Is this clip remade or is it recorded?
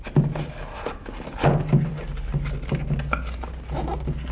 recorded